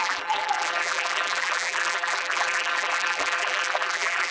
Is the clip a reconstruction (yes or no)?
yes